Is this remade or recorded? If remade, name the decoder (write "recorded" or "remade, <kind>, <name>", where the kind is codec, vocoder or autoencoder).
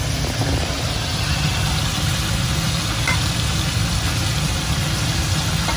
recorded